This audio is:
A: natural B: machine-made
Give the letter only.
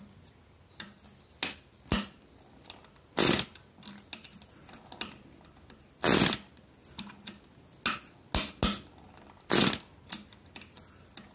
A